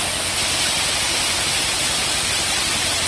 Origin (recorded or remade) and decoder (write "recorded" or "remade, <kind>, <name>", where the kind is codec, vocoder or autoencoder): recorded